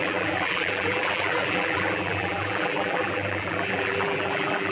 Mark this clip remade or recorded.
remade